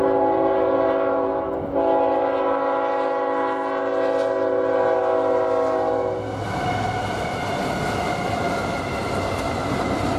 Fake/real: real